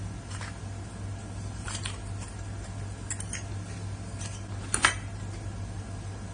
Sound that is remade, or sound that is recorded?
recorded